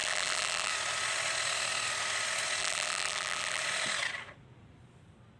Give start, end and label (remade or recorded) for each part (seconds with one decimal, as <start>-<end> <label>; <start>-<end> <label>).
0.0-0.7 remade; 0.7-2.6 recorded; 2.6-3.6 remade; 3.6-5.4 recorded